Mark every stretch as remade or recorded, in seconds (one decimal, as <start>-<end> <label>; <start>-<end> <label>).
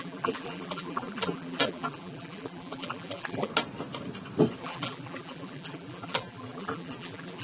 0.0-3.5 remade; 3.5-4.6 recorded; 4.6-7.4 remade